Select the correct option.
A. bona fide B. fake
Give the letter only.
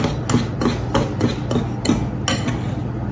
A